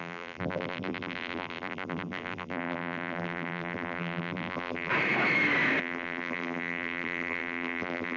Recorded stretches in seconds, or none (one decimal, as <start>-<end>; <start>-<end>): 4.9-5.8